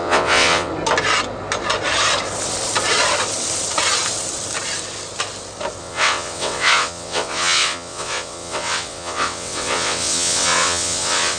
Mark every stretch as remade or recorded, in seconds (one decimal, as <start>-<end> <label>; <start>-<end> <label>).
0.0-0.7 remade; 0.7-5.8 recorded; 5.8-11.4 remade